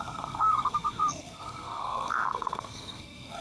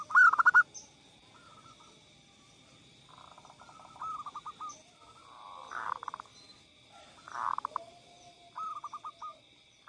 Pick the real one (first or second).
second